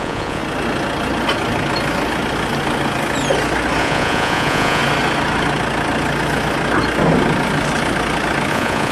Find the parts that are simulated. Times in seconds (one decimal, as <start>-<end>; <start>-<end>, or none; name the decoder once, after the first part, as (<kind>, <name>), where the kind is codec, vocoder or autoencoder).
0.0-0.4 (vocoder, Vocos); 3.8-4.8; 8.5-8.9